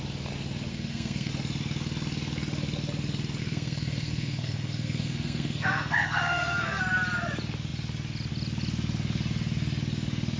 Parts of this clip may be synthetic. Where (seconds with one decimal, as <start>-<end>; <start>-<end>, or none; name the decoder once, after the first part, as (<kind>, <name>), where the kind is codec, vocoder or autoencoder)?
0.7-1.3 (codec, SNAC); 3.4-6.8